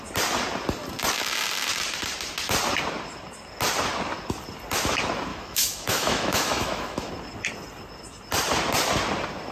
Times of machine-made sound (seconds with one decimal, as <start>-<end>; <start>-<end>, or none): 5.3-7.1